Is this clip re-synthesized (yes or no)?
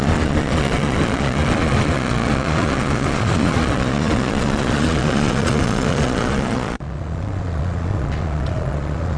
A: yes